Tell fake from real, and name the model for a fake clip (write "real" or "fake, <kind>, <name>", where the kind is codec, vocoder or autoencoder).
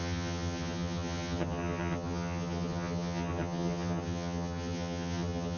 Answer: fake, vocoder, HiFi-GAN